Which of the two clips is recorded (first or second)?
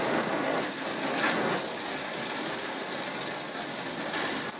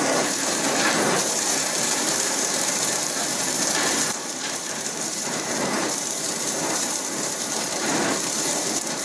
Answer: first